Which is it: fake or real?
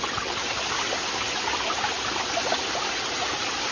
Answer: real